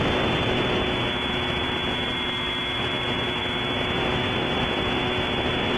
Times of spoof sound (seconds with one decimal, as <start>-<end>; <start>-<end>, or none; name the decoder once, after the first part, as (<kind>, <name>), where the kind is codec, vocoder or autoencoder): none